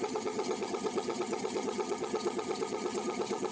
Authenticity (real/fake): fake